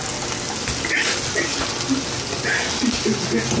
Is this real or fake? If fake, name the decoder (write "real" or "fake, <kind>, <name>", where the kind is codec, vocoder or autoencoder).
real